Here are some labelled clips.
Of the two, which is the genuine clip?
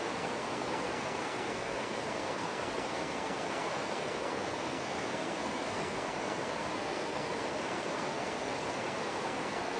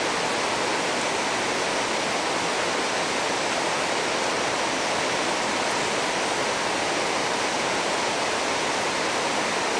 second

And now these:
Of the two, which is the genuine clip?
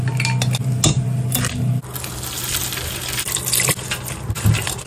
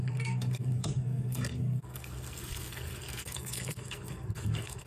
first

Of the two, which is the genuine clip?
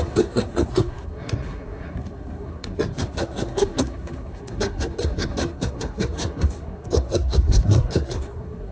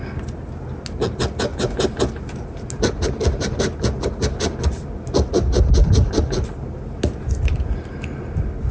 second